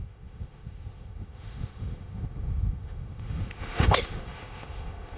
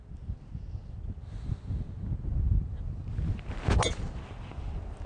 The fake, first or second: first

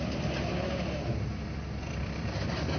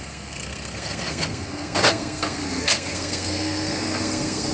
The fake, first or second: second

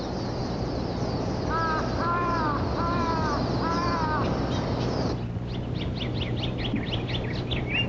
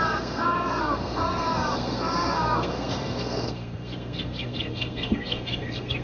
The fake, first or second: second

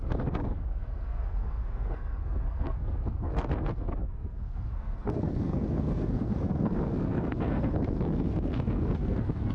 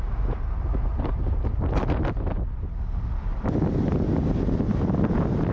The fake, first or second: first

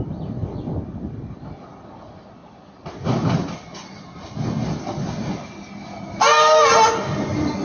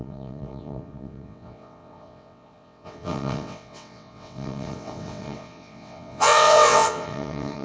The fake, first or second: second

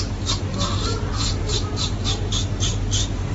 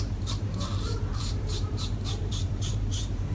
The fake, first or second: second